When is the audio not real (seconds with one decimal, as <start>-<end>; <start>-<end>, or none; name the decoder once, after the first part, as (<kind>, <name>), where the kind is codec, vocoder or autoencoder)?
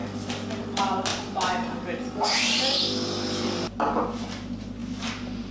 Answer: none